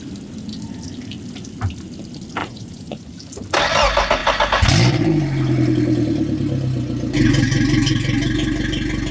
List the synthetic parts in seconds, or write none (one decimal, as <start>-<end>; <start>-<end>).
2.4-3.2